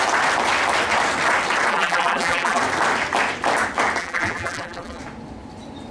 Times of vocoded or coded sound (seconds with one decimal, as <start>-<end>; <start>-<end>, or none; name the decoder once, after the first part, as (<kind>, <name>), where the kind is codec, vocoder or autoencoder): 1.7-2.6 (vocoder, BigVGAN v2); 4.0-5.0